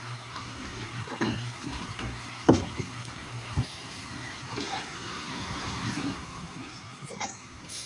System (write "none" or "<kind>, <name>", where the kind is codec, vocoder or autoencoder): codec, SNAC